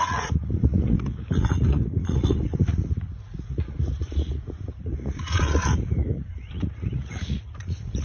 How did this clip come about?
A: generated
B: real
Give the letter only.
A